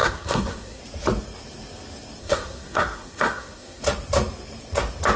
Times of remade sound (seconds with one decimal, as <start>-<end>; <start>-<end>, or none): 0.0-0.8; 2.2-3.8